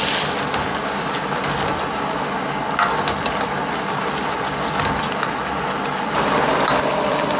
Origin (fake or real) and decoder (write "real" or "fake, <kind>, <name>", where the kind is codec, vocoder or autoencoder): real